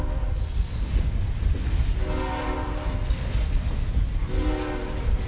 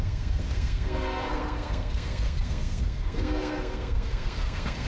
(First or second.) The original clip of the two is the first